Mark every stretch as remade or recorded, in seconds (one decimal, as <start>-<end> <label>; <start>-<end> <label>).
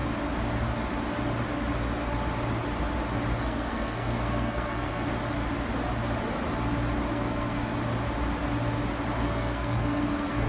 0.0-3.4 recorded; 3.4-5.1 remade; 5.1-7.1 recorded; 7.1-7.7 remade; 7.7-9.2 recorded; 9.2-10.5 remade